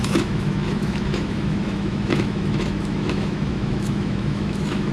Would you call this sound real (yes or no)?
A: no